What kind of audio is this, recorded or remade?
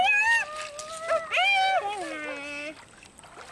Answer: recorded